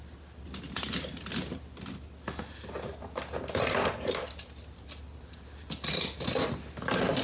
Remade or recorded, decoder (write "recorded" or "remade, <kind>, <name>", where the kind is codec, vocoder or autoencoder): recorded